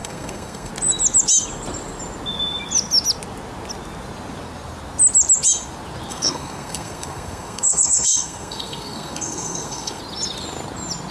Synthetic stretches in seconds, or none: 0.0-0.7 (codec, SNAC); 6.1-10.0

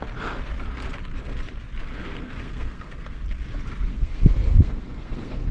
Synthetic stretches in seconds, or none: 1.8-3.2 (codec, SNAC); 3.9-5.5

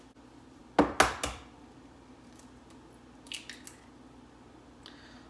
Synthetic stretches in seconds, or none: none

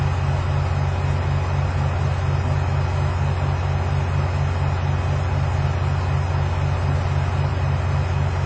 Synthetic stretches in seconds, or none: none

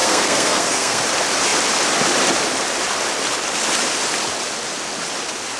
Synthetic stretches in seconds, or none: 0.0-1.0 (codec, SNAC)

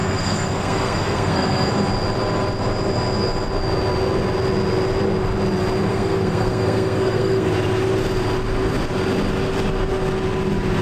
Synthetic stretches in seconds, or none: 0.0-1.7 (codec, SNAC); 5.9-7.5

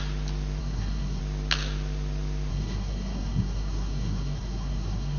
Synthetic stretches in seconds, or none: 0.6-1.2 (codec, SNAC); 2.5-5.2

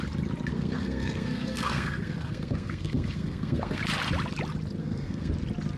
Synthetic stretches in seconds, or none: 0.5-3.8 (codec, SNAC); 4.8-5.3